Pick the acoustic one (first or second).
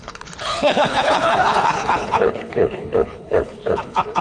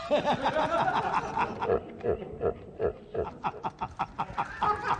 second